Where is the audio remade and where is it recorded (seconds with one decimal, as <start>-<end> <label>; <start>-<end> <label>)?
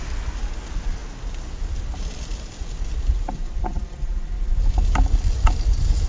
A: 0.0-6.1 recorded